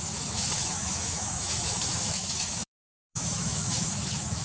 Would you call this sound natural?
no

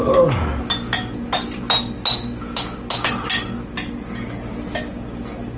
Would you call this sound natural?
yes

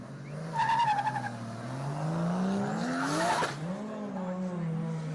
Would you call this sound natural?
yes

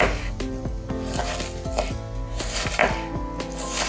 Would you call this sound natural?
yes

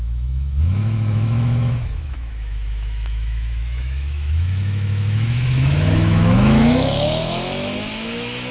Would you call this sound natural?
no